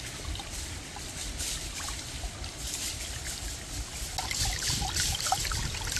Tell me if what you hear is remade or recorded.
recorded